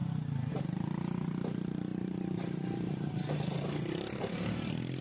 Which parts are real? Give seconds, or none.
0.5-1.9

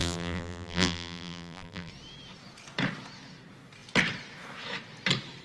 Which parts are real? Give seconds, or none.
1.9-5.4

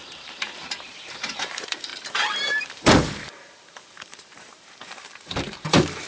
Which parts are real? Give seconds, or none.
none

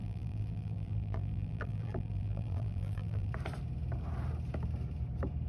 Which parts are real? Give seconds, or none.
3.3-5.5

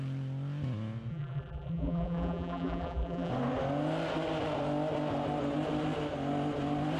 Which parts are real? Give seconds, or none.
0.0-1.1; 3.3-7.0

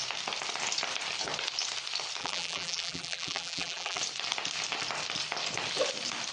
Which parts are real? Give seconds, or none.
0.0-2.2; 4.0-6.3